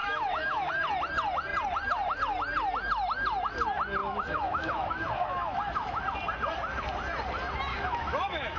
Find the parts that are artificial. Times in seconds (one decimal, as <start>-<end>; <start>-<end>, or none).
0.0-0.7; 4.0-6.0; 7.7-8.6